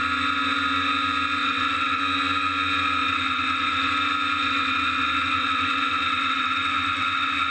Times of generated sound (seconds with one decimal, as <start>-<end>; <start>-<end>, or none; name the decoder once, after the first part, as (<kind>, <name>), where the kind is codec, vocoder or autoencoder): 1.4-2.0 (vocoder, WaveNeXt); 3.0-3.9; 4.4-7.5